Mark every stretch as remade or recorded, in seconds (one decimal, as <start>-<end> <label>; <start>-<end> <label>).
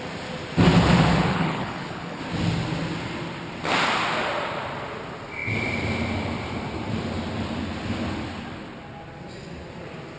0.0-1.3 recorded; 1.3-2.2 remade; 2.2-10.2 recorded